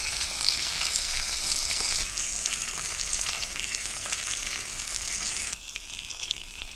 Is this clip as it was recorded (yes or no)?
no